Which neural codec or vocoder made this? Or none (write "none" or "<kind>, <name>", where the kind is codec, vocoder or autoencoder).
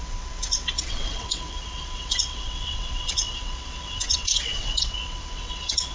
vocoder, WaveNeXt